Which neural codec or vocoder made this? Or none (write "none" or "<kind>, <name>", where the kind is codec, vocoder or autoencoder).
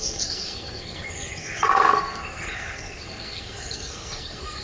codec, SNAC